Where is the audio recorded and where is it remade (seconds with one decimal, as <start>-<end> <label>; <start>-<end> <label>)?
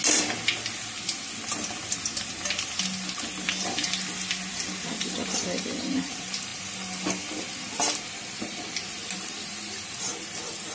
0.0-10.7 recorded